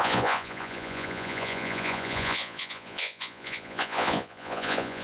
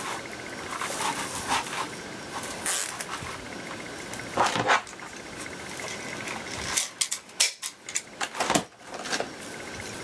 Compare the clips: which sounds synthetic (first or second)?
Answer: first